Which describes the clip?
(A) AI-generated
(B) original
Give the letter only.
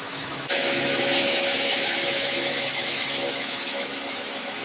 A